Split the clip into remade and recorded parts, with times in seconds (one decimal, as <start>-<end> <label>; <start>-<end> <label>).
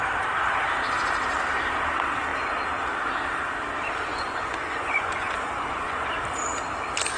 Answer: 0.0-4.1 recorded; 4.1-6.2 remade; 6.2-7.2 recorded